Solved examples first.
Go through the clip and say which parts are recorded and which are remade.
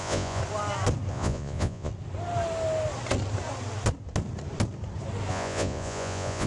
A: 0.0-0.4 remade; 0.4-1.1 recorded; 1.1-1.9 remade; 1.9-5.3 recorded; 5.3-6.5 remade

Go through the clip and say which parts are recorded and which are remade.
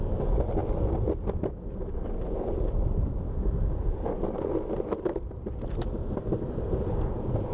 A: 0.0-7.5 recorded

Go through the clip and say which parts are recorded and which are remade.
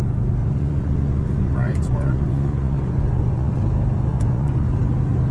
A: 0.0-0.4 recorded; 0.4-3.6 remade; 3.6-4.1 recorded; 4.1-4.7 remade; 4.7-5.3 recorded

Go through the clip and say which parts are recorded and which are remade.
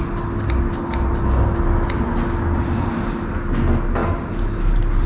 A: 0.0-5.1 recorded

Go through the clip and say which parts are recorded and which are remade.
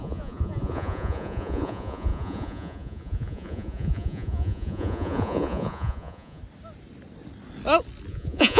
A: 0.0-6.4 remade; 6.4-8.1 recorded; 8.1-8.6 remade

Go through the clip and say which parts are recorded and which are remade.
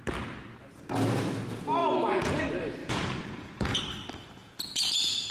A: 0.0-1.8 recorded; 1.8-2.4 remade; 2.4-2.8 recorded; 2.8-3.8 remade; 3.8-4.4 recorded; 4.4-5.3 remade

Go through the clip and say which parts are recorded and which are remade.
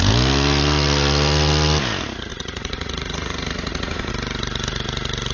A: 0.0-2.3 recorded; 2.3-4.1 remade; 4.1-5.3 recorded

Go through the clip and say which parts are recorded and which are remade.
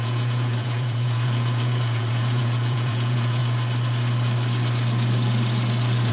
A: 0.0-3.4 remade; 3.4-6.1 recorded